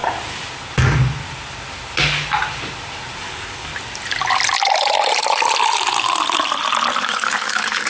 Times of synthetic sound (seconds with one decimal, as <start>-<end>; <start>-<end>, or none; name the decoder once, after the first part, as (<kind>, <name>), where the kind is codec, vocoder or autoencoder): 3.2-3.7 (codec, DAC); 7.0-7.9